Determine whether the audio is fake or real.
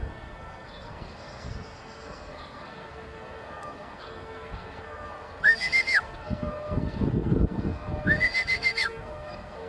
fake